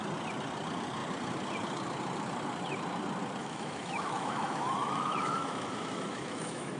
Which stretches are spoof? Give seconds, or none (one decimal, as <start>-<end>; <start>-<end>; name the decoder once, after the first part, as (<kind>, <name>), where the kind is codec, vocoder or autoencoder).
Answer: 3.4-6.8 (autoencoder, DAC-VAE)